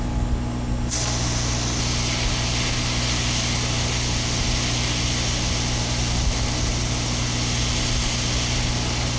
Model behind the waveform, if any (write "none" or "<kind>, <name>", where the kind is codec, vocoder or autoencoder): none